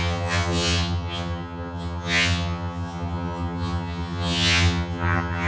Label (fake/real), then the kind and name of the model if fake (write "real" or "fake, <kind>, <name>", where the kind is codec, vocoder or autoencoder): fake, vocoder, HiFi-GAN